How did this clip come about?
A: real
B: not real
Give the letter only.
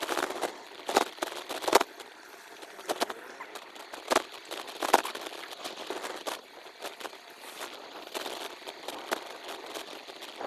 A